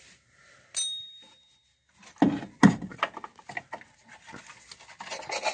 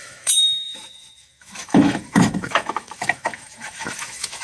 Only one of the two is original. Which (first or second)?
first